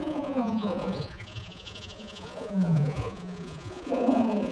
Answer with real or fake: fake